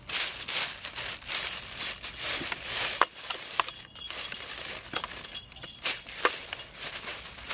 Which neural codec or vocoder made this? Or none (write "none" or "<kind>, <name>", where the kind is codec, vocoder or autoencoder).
none